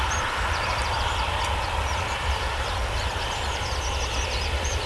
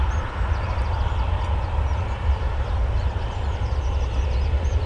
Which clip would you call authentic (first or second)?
second